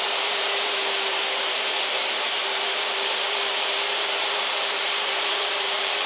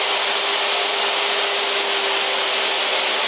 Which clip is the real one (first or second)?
second